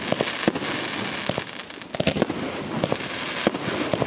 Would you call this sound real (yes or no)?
yes